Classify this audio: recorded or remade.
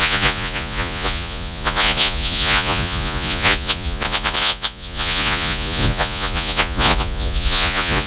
remade